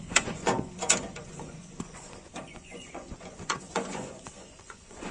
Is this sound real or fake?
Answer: fake